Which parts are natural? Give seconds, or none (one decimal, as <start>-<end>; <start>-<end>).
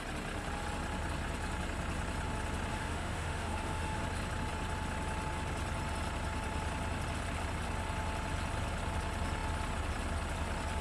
0.0-2.7; 4.0-10.8